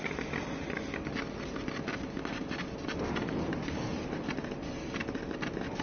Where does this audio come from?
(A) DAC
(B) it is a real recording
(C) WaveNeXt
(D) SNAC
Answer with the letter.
B